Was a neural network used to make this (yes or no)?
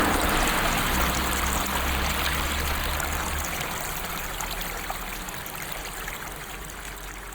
no